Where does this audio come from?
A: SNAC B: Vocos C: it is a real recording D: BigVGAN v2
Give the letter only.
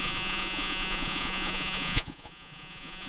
B